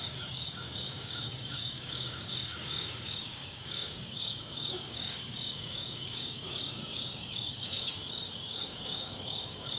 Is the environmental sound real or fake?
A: fake